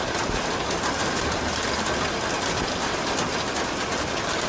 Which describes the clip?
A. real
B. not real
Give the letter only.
A